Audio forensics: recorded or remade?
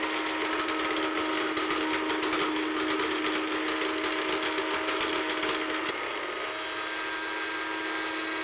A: recorded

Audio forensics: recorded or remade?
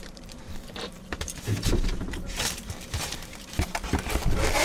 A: remade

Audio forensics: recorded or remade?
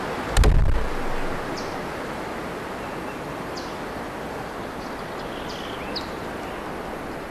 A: recorded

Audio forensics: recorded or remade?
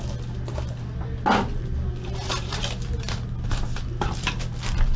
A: recorded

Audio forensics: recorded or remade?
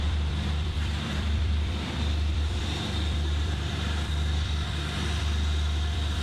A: remade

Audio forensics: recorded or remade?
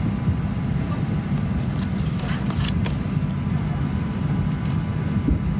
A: remade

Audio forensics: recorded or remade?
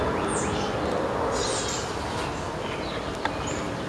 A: recorded